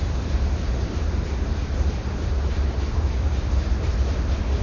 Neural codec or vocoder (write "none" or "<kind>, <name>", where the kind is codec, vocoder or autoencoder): none